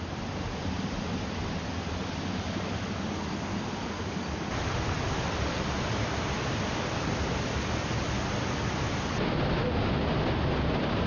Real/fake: real